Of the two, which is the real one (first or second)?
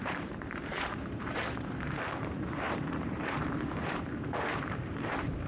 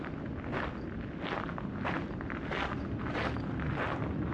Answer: second